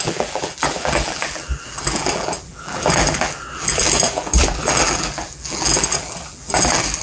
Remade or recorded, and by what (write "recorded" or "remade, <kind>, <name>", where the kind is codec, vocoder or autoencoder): remade, vocoder, BigVGAN v2